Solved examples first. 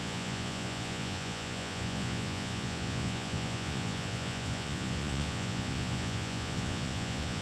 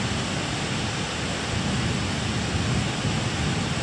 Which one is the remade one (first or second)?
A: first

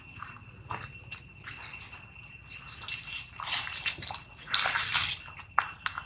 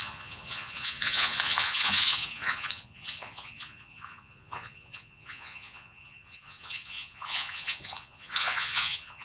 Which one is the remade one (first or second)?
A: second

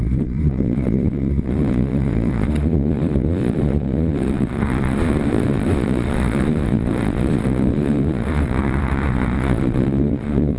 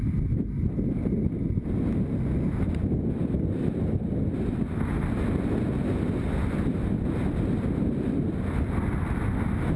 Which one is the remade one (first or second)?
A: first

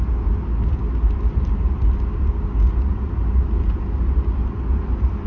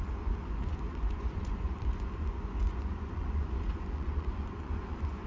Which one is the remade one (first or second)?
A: second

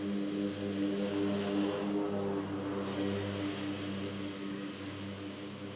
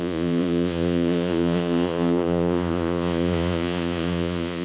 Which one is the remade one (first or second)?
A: second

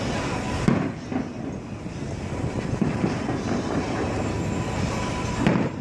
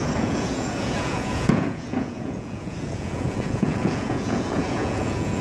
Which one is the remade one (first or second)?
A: second